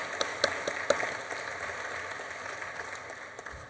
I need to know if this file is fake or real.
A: real